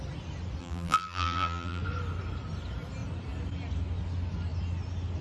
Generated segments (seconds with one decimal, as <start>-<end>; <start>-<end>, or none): 0.6-1.8